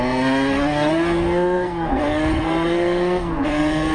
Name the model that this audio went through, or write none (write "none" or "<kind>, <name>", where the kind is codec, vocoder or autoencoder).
codec, SNAC